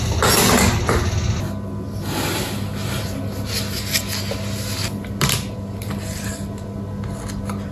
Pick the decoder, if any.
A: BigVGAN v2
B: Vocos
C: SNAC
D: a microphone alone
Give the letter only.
D